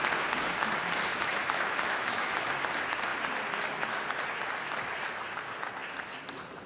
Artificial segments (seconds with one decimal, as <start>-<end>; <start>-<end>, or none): 1.1-2.5